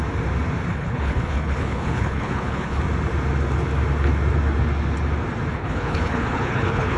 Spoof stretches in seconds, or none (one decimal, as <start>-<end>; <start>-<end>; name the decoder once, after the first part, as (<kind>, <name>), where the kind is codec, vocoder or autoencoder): 0.7-2.8 (codec, HILCodec); 5.5-7.0